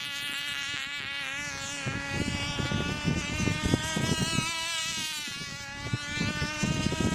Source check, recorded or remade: recorded